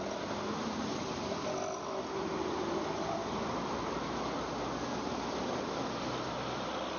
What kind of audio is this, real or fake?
real